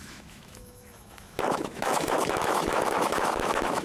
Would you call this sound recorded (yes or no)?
no